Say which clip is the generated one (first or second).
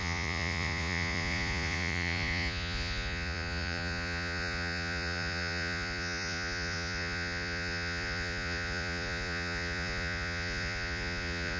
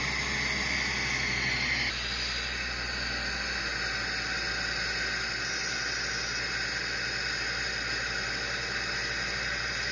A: first